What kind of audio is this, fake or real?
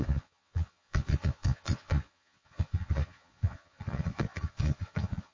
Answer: fake